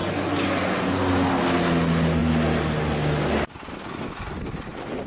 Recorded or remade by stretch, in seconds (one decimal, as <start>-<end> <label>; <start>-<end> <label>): 0.0-5.1 recorded